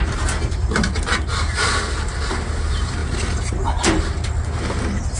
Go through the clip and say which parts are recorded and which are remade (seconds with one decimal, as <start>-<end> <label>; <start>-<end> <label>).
0.0-5.2 recorded